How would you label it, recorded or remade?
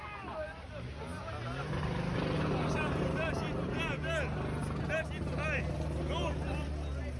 recorded